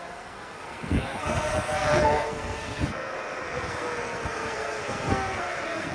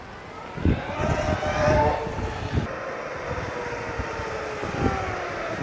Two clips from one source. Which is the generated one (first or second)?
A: first